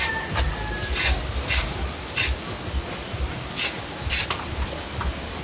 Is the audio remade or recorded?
recorded